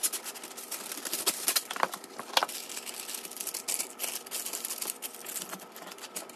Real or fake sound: real